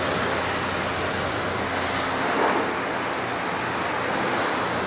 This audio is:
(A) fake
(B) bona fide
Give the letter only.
B